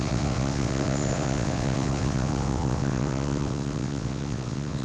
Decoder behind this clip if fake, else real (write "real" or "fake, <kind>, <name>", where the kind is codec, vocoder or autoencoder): fake, vocoder, WaveNeXt